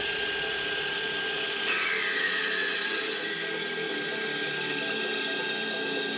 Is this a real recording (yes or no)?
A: yes